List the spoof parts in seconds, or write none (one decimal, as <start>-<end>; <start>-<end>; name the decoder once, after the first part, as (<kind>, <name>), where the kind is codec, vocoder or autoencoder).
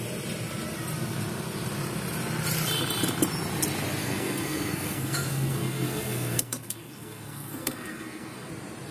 4.0-8.5 (codec, SNAC)